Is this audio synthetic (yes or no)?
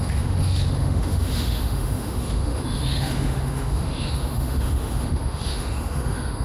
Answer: yes